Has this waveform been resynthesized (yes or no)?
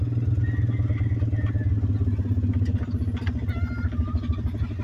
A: no